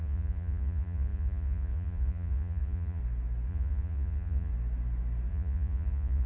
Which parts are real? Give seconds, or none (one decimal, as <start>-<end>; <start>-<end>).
3.0-3.5; 4.5-5.3